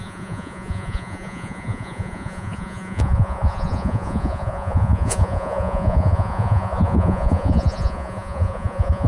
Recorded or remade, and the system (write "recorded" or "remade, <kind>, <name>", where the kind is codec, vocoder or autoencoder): remade, vocoder, Vocos